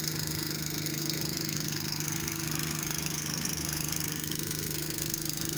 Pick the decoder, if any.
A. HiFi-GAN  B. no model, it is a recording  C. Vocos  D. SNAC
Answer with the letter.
D